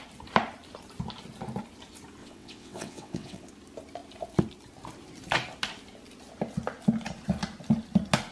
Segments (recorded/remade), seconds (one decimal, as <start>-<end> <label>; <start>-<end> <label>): 0.0-2.2 recorded; 2.2-3.5 remade; 3.5-8.3 recorded

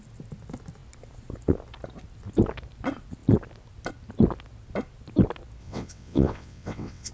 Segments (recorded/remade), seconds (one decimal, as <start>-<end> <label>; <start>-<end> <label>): 0.0-5.6 recorded; 5.6-7.1 remade

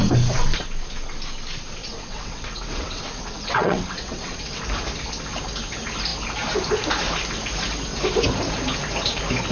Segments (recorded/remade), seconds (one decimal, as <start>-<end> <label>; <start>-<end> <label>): 0.0-1.8 recorded; 1.8-4.6 remade; 4.6-9.5 recorded

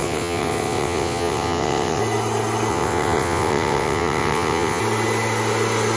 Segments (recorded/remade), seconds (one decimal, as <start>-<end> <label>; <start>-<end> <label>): 0.0-2.0 remade; 2.0-2.7 recorded; 2.7-4.8 remade; 4.8-6.0 recorded

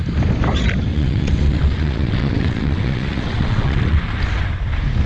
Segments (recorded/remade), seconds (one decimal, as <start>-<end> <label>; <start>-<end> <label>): 0.0-0.9 recorded; 0.9-4.0 remade; 4.0-5.1 recorded